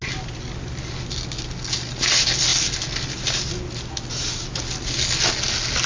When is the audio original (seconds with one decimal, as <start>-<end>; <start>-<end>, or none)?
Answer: 0.0-5.9